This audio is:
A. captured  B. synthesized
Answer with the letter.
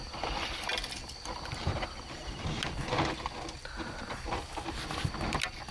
A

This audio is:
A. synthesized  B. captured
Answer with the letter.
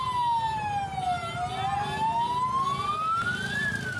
B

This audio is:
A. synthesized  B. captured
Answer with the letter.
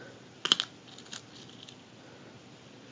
B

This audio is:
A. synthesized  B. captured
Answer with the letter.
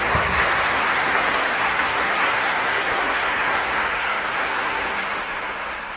A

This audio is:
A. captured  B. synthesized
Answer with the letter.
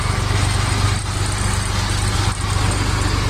A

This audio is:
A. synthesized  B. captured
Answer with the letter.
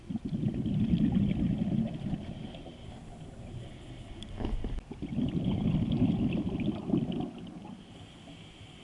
B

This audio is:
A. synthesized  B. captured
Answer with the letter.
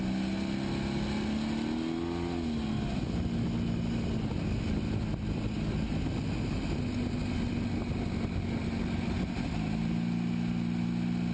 B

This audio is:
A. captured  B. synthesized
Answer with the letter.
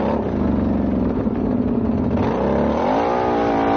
A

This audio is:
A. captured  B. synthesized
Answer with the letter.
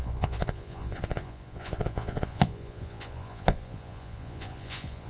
B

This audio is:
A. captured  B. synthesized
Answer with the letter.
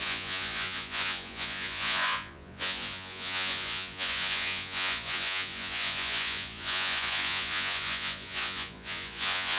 B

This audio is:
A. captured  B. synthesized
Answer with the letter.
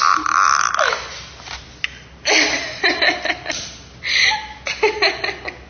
A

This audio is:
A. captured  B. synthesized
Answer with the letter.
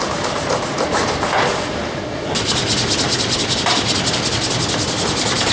A